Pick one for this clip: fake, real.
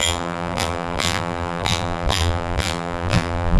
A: fake